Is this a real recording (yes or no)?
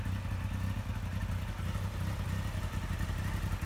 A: yes